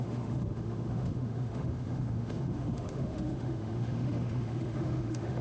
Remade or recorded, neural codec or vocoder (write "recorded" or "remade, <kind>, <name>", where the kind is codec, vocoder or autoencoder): remade, autoencoder, DAC-VAE